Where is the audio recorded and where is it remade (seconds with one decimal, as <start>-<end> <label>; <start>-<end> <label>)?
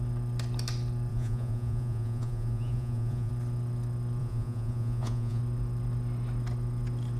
0.0-1.1 recorded; 1.1-3.3 remade; 3.3-4.2 recorded; 4.2-5.4 remade; 5.4-7.2 recorded